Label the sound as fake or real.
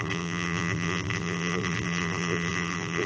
fake